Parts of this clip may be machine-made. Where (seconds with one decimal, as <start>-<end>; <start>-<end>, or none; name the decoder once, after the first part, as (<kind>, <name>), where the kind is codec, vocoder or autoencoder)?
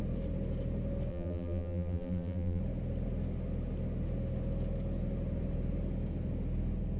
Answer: 1.1-2.6 (vocoder, BigVGAN v2)